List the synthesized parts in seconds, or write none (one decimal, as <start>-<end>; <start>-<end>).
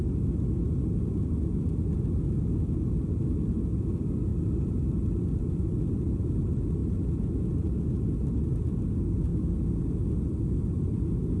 none